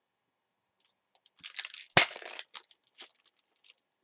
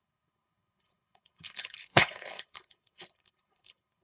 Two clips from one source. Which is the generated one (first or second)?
second